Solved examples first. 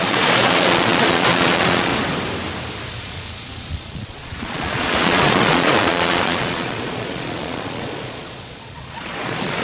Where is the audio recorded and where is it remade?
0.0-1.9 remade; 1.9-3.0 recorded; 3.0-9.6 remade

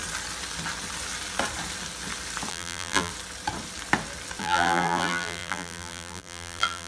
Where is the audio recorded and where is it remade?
0.0-2.5 recorded; 2.5-3.1 remade; 3.1-4.4 recorded; 4.4-6.9 remade

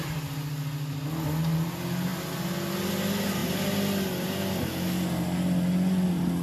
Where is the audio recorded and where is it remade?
0.0-6.4 recorded